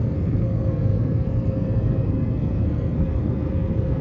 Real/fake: fake